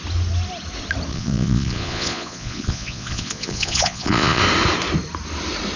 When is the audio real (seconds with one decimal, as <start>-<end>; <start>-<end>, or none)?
0.0-1.1; 4.4-5.8